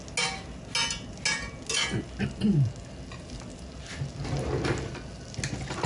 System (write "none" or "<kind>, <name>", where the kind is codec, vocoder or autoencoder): none